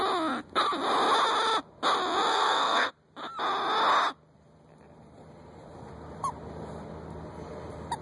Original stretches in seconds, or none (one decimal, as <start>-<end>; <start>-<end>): 0.0-2.3; 2.9-8.0